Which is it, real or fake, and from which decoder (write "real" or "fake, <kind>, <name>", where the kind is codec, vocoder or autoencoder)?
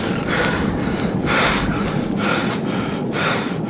fake, vocoder, BigVGAN v2